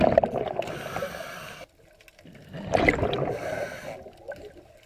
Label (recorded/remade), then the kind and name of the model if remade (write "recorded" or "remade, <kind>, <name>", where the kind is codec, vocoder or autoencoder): recorded